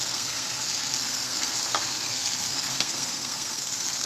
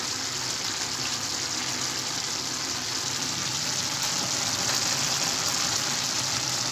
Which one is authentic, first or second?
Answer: second